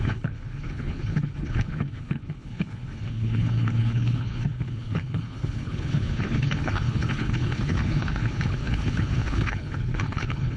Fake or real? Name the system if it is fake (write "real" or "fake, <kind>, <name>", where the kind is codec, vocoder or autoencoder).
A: fake, codec, HILCodec